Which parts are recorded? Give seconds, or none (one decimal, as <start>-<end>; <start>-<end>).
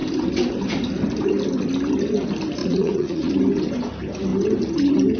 0.0-2.6; 3.3-5.2